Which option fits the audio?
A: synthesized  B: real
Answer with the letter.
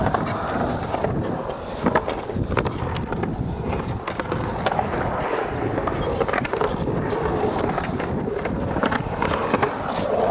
B